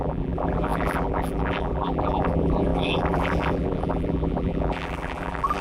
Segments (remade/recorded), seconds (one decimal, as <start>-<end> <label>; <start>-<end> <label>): 0.0-5.6 remade